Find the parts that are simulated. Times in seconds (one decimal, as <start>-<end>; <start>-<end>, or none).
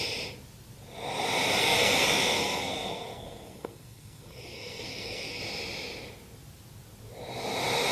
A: 1.6-5.4